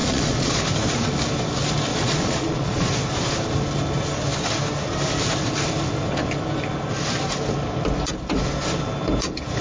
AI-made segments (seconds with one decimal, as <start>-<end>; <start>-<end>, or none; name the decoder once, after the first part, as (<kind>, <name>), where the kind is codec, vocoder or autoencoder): 0.0-0.6 (vocoder, Vocos); 1.9-2.9